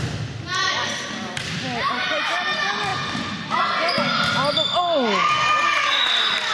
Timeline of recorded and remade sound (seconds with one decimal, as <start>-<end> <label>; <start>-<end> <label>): 0.0-6.5 recorded